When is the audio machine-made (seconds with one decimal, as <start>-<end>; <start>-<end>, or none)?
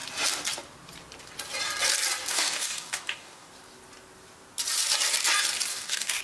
2.3-3.5; 5.7-6.2